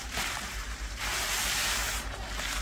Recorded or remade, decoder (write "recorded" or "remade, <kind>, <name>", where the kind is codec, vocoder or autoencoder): remade, vocoder, BigVGAN v2